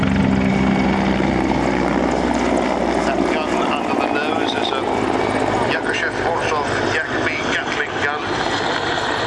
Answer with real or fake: real